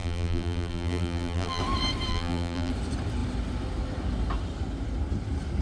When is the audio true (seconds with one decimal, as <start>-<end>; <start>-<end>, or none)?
1.6-2.1; 2.7-5.6